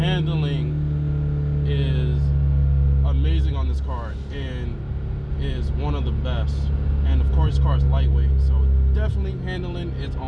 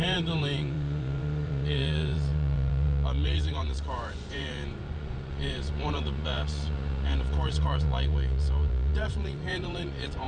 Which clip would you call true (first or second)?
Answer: first